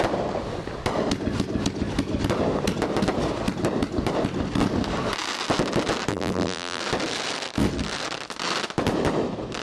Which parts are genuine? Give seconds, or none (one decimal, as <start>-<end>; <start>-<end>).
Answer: 0.0-6.1; 6.8-9.6